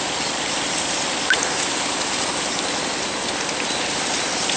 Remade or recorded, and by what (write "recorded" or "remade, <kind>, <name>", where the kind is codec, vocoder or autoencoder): recorded